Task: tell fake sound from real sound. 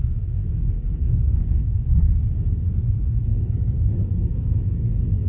fake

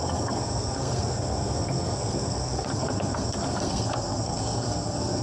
fake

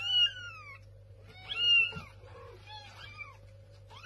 real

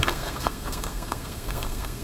fake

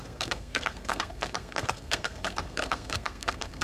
fake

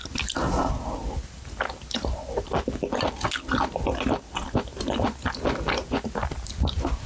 real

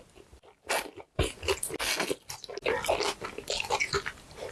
real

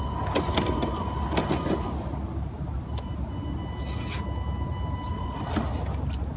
real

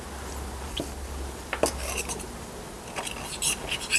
real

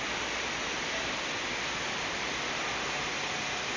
real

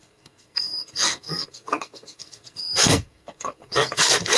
fake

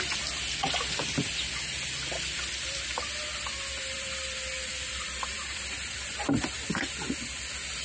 real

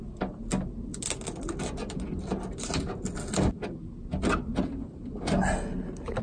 real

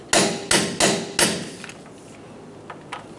real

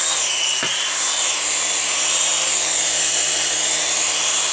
real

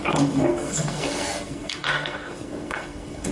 fake